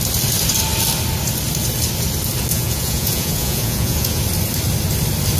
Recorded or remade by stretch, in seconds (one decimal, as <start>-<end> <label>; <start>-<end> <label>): 0.0-2.5 recorded; 2.5-4.2 remade; 4.2-5.4 recorded